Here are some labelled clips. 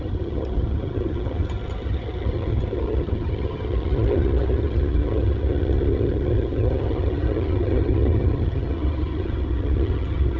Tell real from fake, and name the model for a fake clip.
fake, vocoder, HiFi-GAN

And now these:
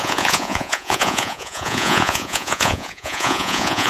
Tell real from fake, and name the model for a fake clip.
fake, vocoder, Vocos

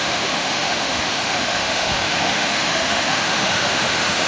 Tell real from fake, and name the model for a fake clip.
fake, autoencoder, DAC-VAE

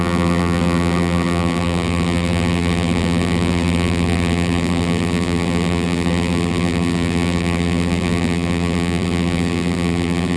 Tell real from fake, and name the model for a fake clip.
fake, vocoder, BigVGAN v2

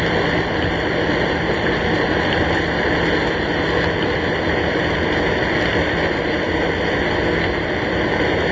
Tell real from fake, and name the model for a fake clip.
real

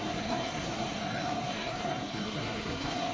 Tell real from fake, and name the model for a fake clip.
fake, codec, SNAC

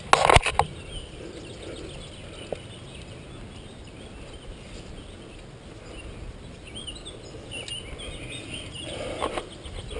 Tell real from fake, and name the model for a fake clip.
real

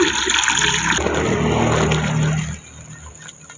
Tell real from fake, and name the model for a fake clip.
real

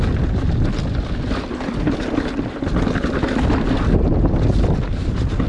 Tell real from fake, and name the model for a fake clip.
real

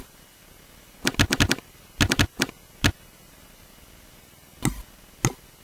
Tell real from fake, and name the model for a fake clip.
real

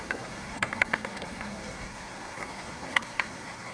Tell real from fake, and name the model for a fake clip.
fake, codec, SNAC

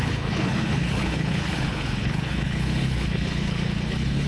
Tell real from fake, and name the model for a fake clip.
fake, codec, HILCodec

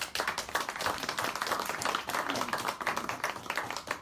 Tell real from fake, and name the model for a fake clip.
real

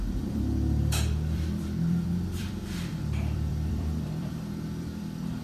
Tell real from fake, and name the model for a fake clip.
fake, vocoder, BigVGAN v2